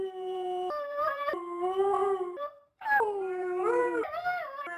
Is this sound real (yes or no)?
no